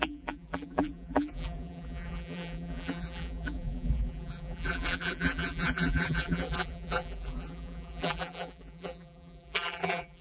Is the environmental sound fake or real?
fake